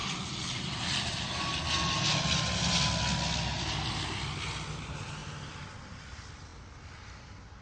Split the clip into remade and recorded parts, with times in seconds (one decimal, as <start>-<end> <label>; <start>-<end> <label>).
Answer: 0.0-1.6 remade; 1.6-7.6 recorded